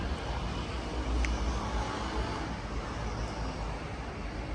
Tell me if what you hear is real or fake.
real